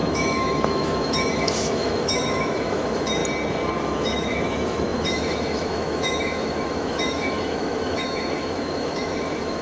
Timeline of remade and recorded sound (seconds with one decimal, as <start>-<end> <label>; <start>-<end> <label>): 0.0-3.2 remade; 3.2-3.8 recorded; 3.8-9.6 remade